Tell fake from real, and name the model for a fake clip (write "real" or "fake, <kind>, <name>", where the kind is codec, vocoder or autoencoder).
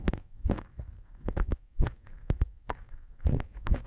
fake, codec, SNAC